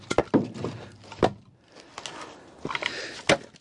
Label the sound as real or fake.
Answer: real